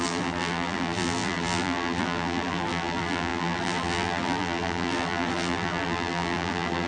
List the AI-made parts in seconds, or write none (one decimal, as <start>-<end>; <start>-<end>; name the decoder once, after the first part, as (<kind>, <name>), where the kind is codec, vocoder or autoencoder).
0.0-6.9 (vocoder, BigVGAN v2)